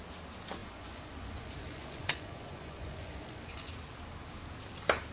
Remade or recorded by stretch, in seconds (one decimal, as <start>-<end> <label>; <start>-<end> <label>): 0.0-0.6 recorded; 0.6-3.7 remade; 3.7-5.1 recorded